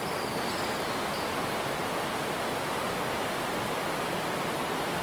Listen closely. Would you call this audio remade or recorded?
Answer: recorded